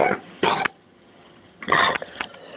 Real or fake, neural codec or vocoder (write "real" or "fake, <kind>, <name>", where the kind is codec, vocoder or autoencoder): fake, vocoder, HiFi-GAN